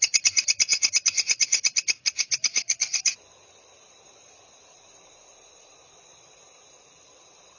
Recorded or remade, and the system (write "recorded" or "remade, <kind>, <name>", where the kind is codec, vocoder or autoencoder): recorded